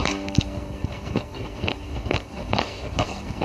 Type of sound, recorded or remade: remade